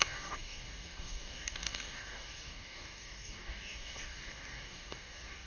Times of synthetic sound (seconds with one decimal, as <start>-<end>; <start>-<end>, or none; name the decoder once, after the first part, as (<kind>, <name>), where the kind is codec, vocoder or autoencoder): 0.0-5.5 (codec, DAC)